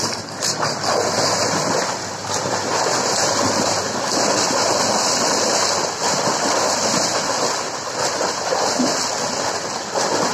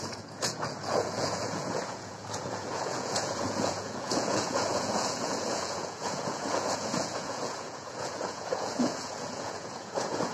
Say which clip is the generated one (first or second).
second